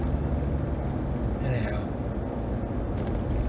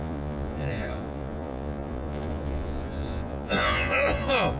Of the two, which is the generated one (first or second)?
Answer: second